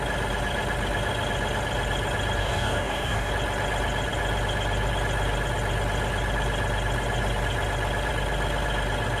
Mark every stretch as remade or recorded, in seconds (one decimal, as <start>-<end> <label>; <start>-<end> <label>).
0.0-2.4 recorded; 2.4-3.3 remade; 3.3-9.2 recorded